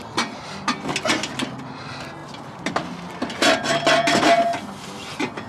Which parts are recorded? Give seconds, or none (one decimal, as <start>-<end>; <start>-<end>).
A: 0.0-5.5

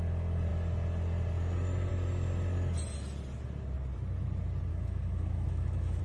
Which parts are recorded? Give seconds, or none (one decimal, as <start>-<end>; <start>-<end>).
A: 0.0-4.7

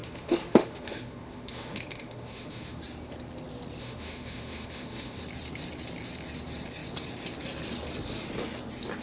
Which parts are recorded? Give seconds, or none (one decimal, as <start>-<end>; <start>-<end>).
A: 2.8-3.8; 5.2-9.0

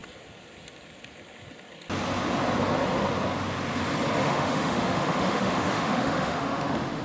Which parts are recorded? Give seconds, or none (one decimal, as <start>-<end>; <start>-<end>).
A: 0.0-4.2